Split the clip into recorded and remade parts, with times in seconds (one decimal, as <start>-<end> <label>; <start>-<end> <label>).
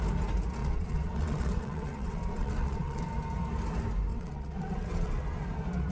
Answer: 0.0-0.6 recorded; 0.6-3.0 remade; 3.0-4.1 recorded; 4.1-5.2 remade; 5.2-5.9 recorded